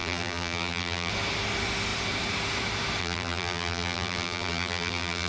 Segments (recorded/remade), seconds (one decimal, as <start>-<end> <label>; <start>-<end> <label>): 0.0-1.1 remade; 1.1-3.0 recorded; 3.0-5.3 remade